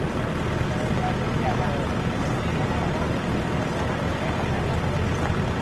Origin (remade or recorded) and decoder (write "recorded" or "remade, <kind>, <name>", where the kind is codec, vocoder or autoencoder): recorded